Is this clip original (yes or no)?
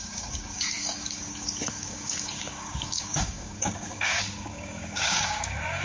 no